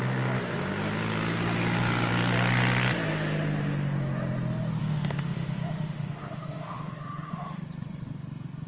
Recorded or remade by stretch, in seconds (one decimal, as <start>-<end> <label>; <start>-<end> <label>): 0.0-4.8 recorded; 4.8-7.6 remade; 7.6-8.7 recorded